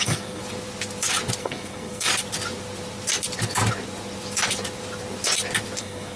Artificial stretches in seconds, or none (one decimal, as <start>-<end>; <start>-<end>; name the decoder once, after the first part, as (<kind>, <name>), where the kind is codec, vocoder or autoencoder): 0.0-0.4 (codec, SNAC); 1.4-2.1; 5.8-6.2